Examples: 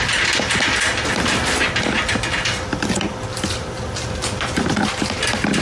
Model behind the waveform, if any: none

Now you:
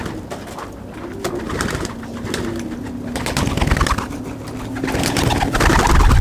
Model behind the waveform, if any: none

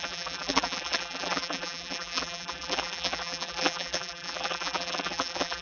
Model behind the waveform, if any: vocoder, BigVGAN v2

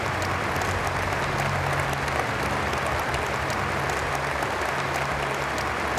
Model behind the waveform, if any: none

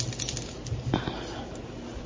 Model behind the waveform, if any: none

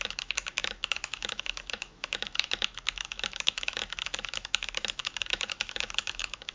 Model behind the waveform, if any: autoencoder, DAC-VAE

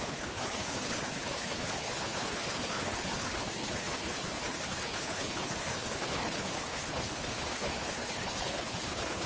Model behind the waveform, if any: codec, HILCodec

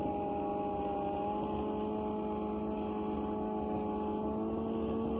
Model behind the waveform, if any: none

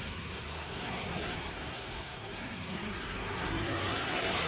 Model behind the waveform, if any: codec, SNAC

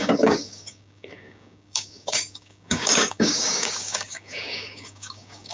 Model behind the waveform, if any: codec, DAC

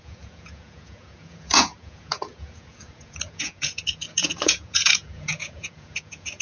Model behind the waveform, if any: vocoder, Vocos